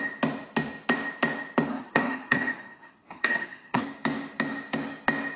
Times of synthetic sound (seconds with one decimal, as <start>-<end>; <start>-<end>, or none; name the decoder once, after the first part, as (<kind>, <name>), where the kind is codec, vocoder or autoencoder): 1.7-3.8 (codec, SNAC)